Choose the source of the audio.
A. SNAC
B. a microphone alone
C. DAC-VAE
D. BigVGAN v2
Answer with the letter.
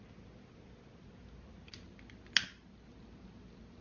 B